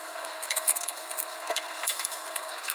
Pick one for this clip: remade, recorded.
remade